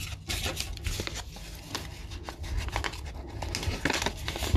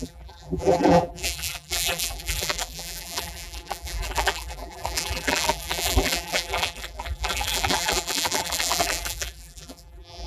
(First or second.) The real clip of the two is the first